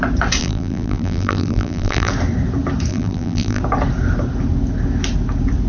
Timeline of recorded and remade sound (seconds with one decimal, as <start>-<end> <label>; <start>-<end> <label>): 0.0-0.4 recorded; 0.4-2.1 remade; 2.1-2.9 recorded; 2.9-3.6 remade; 3.6-5.7 recorded

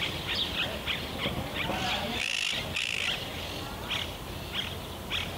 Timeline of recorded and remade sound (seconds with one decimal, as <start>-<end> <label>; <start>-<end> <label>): 0.0-5.4 recorded

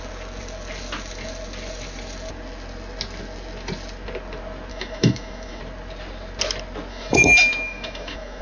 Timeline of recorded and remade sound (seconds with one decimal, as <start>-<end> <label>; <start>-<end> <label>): 0.0-4.7 recorded; 4.7-5.6 remade; 5.6-6.9 recorded; 6.9-8.4 remade

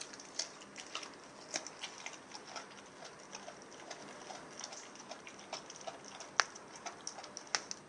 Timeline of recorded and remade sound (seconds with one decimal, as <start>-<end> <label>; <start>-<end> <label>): 0.0-7.9 recorded

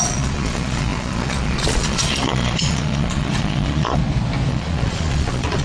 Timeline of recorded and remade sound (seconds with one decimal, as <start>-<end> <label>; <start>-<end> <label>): 0.0-4.0 remade; 4.0-4.5 recorded; 4.5-5.6 remade

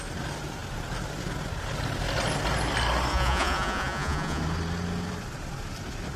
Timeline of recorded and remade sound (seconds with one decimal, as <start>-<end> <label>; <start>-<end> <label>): 0.0-3.1 recorded; 3.1-4.4 remade; 4.4-6.2 recorded

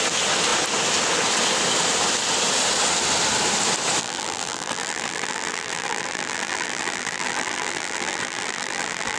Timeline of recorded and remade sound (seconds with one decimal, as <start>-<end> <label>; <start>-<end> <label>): 0.0-4.0 recorded; 4.0-9.2 remade

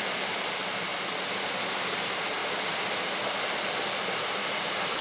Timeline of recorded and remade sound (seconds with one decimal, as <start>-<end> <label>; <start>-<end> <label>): 0.0-5.0 recorded